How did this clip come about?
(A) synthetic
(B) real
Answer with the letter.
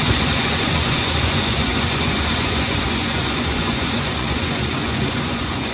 A